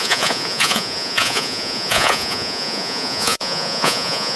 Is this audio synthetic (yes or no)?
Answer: yes